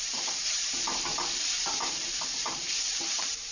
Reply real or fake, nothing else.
fake